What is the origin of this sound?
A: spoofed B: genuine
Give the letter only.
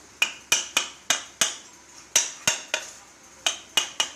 B